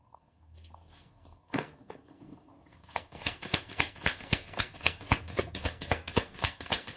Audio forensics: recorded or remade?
remade